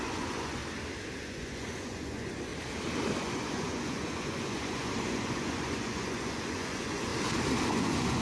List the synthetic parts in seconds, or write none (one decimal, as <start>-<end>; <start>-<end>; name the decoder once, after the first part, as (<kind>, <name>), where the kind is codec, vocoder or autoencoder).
0.0-0.6 (vocoder, Vocos); 1.2-2.5; 3.2-7.1; 7.7-8.2